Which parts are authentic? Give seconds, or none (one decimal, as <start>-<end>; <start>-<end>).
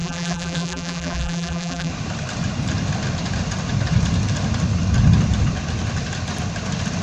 1.9-7.0